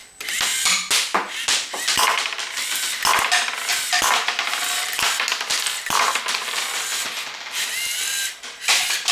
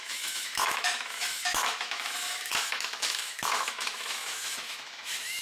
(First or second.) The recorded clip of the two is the first